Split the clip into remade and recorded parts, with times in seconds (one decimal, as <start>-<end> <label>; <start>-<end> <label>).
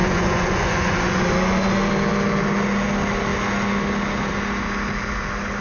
0.0-1.2 remade; 1.2-5.6 recorded